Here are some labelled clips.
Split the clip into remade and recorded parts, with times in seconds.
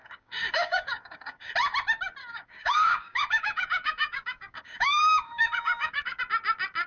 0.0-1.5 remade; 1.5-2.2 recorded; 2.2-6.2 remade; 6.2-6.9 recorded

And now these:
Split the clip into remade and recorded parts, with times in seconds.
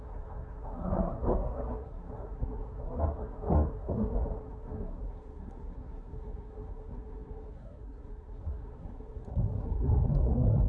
0.0-10.7 remade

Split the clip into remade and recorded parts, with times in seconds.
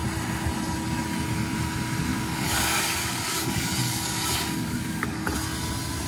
0.0-2.1 recorded; 2.1-5.3 remade; 5.3-6.1 recorded